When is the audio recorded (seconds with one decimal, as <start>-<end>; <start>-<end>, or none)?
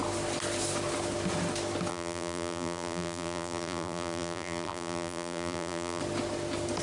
0.0-1.9; 6.0-6.8